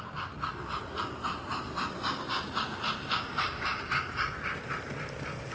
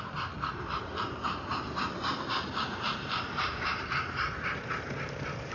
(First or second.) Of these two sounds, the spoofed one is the second